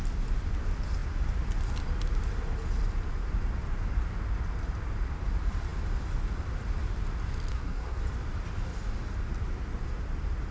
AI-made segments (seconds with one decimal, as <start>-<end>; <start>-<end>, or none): 7.5-8.0